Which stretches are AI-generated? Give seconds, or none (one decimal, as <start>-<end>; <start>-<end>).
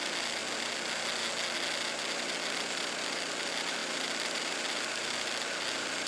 none